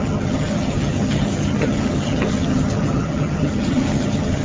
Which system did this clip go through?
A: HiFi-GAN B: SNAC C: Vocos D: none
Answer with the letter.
A